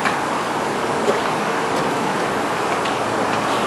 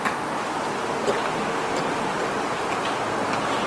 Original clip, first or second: second